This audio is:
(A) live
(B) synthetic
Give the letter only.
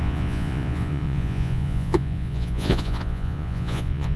B